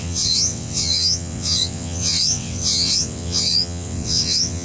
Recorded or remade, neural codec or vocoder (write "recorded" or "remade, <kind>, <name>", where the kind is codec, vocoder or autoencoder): remade, vocoder, WaveNeXt